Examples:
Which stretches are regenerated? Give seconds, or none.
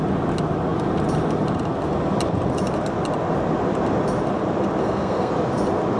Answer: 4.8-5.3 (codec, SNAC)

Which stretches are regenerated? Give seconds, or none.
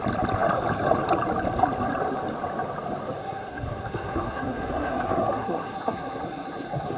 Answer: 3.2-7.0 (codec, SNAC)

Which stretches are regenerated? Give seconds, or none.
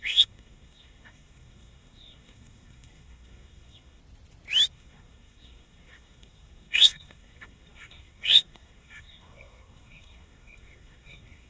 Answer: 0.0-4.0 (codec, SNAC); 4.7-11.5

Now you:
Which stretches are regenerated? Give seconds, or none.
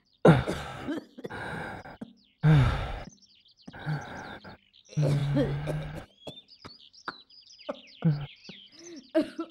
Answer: none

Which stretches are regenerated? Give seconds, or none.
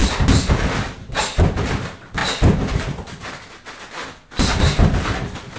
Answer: none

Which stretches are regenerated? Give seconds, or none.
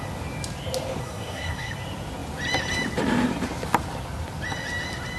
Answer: 1.0-1.7 (codec, SNAC)